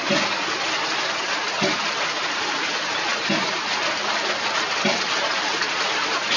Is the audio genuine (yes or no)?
yes